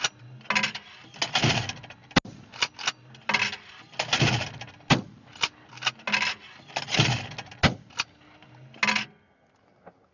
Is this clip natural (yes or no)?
yes